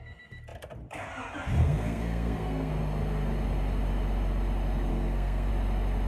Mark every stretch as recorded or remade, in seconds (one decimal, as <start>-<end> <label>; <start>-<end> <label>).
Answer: 0.0-1.6 recorded; 1.6-2.7 remade; 2.7-4.9 recorded; 4.9-5.5 remade; 5.5-6.1 recorded